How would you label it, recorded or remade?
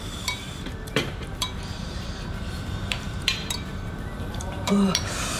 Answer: remade